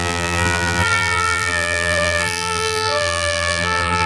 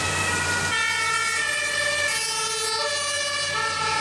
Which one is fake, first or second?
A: first